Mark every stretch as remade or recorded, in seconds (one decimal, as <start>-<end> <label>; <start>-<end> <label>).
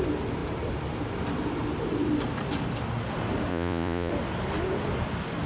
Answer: 0.0-3.5 recorded; 3.5-4.1 remade; 4.1-5.5 recorded